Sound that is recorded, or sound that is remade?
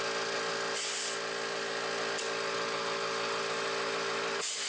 recorded